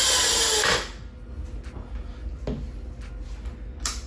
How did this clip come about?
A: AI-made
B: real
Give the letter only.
B